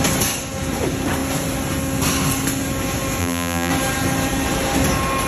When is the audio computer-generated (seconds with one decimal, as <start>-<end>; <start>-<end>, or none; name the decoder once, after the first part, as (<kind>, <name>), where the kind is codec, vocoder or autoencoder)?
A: 3.2-3.7 (vocoder, BigVGAN v2)